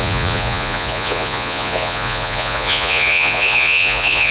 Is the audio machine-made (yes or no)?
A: yes